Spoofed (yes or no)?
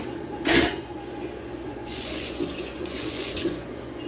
yes